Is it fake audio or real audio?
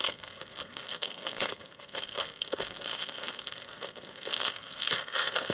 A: fake